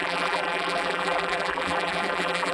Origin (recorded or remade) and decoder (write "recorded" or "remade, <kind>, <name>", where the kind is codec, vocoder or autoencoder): remade, vocoder, BigVGAN v2